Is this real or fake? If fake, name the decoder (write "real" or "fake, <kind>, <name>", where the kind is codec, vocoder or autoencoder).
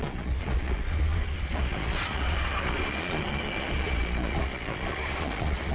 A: fake, vocoder, Vocos